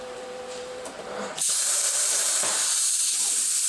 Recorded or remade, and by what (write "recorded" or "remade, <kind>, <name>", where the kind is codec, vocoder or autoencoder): remade, vocoder, BigVGAN v2